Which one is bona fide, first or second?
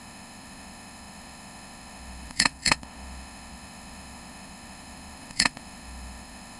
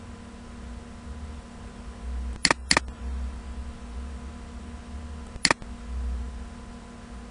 second